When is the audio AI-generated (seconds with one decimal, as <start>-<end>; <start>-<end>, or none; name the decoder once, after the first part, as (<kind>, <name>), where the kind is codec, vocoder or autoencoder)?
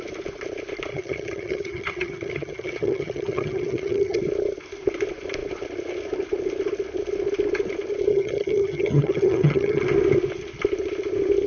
0.9-4.2 (vocoder, HiFi-GAN); 8.1-9.8